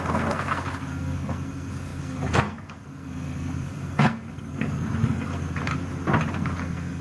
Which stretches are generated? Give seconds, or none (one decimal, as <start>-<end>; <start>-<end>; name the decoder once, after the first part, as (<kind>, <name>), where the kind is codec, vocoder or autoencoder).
0.0-5.7 (codec, SNAC); 6.3-7.0